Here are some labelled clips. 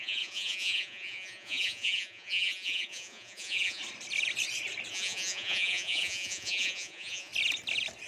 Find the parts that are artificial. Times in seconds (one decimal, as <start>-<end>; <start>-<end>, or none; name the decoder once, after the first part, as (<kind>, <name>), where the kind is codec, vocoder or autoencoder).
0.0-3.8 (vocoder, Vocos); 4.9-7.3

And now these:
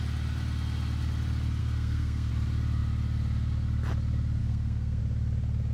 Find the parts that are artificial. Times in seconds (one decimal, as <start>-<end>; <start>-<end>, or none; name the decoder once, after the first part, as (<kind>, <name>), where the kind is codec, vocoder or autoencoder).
1.6-2.3 (codec, SNAC); 4.4-5.0

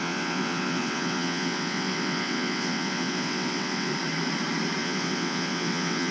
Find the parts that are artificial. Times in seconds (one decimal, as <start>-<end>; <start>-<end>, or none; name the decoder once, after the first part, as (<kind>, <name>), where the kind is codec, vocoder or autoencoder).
0.0-3.9 (vocoder, WaveNeXt); 4.8-6.1